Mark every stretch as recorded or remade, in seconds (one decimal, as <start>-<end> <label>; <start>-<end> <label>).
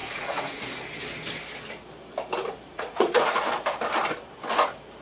0.0-0.6 remade; 0.6-2.7 recorded; 2.7-3.4 remade; 3.4-5.0 recorded